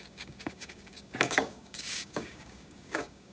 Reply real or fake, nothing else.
fake